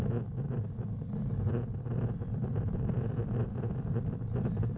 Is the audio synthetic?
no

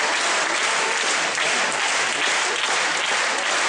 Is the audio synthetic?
no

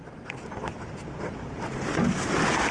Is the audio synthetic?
no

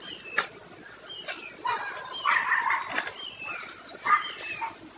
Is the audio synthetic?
no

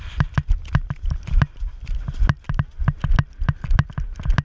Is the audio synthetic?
no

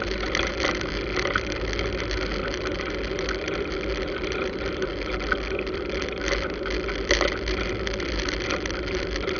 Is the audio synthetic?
no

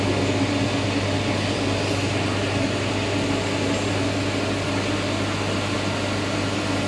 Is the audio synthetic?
no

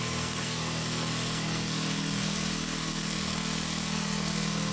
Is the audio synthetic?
yes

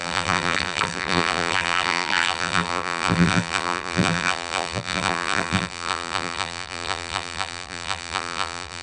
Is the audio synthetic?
yes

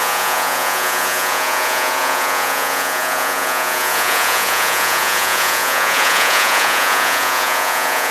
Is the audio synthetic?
yes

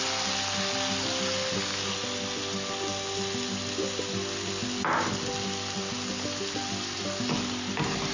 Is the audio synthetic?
no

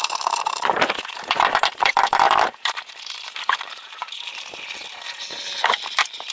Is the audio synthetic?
yes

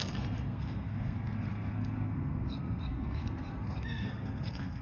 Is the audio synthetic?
yes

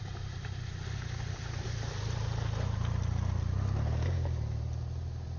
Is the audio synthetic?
no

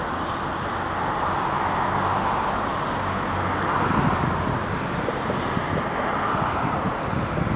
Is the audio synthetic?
no